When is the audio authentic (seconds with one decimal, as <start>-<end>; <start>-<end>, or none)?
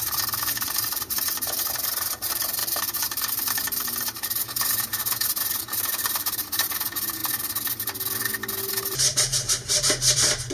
7.2-8.7